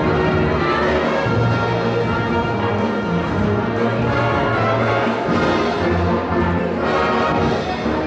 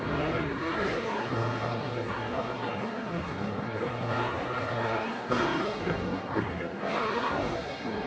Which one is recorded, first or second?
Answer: first